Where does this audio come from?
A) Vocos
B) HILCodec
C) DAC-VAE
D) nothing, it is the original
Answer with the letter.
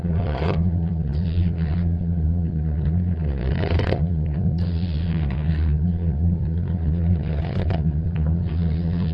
A